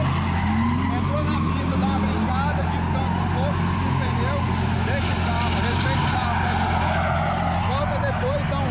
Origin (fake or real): real